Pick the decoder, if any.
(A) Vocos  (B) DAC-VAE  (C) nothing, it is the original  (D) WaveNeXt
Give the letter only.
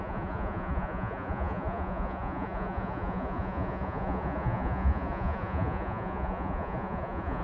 A